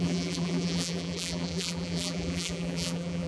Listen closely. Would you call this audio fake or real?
fake